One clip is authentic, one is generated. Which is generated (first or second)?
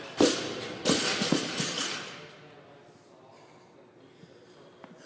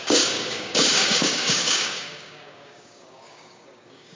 second